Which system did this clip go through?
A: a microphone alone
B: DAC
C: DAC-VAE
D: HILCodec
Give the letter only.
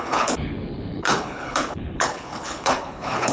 D